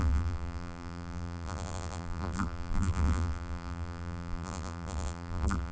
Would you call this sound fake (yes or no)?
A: yes